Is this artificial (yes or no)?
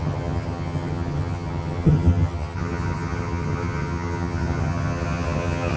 yes